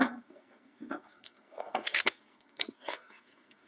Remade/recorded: remade